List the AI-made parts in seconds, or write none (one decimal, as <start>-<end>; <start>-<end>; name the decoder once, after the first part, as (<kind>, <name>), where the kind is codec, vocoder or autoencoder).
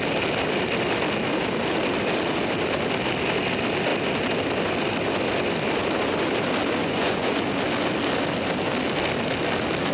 6.8-7.4 (vocoder, Vocos)